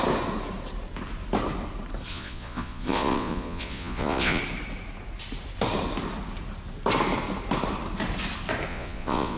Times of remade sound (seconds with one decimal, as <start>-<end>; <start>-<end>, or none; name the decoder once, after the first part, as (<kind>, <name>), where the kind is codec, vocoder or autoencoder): 2.1-4.4 (vocoder, Vocos); 8.7-9.4